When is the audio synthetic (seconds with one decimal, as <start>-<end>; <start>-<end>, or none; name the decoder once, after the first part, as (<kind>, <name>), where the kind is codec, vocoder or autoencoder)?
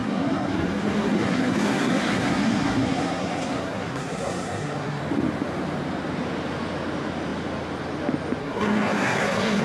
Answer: 0.0-5.0 (codec, SNAC); 8.4-9.6